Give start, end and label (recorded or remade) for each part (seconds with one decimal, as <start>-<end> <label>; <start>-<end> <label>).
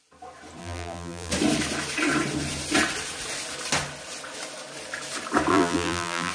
0.0-0.6 recorded; 0.6-1.3 remade; 1.3-5.5 recorded; 5.5-6.3 remade